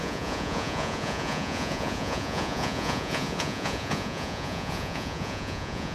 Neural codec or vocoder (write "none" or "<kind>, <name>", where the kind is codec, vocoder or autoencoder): vocoder, Vocos